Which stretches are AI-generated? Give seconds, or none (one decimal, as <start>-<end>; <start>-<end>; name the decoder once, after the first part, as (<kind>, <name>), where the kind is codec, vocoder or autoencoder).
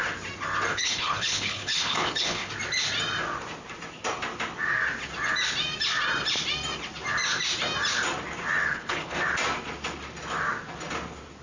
0.7-2.5 (codec, HILCodec); 8.7-9.2